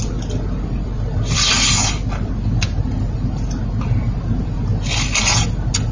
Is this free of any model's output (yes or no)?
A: yes